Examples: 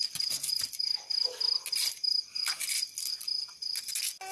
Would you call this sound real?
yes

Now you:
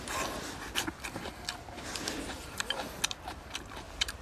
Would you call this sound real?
yes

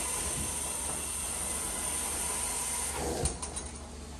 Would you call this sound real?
yes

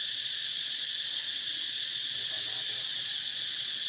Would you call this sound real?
no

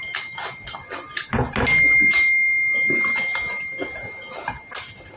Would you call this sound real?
yes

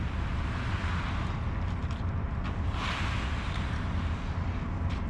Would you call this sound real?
yes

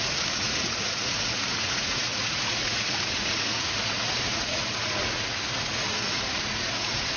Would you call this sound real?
no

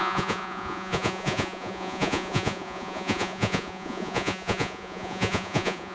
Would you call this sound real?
no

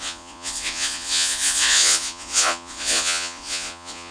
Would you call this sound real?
no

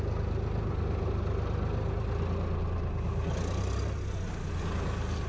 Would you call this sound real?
yes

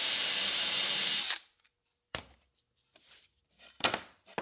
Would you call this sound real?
no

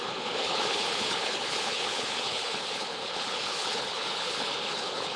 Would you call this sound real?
no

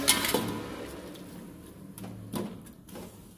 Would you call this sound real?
yes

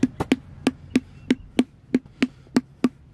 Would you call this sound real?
yes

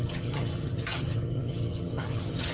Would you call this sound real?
no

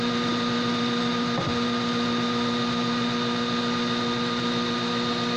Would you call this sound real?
yes